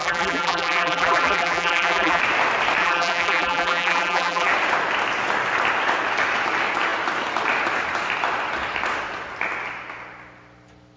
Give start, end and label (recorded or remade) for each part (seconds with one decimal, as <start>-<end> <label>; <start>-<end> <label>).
0.0-2.2 remade; 2.2-2.8 recorded; 2.8-4.5 remade; 4.5-11.0 recorded